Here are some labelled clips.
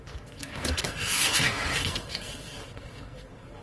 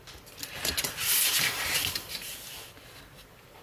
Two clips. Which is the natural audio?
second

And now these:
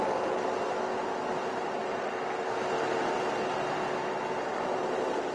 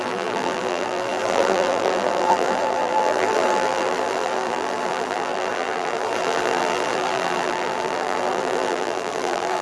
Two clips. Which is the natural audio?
first